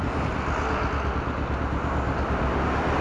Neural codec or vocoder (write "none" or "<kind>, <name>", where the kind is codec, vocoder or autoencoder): none